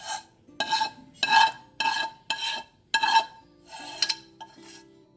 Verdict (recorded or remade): recorded